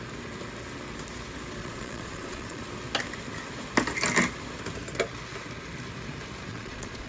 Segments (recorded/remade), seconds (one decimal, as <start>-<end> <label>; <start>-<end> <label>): 0.0-1.6 recorded; 1.6-2.6 remade; 2.6-6.5 recorded; 6.5-7.1 remade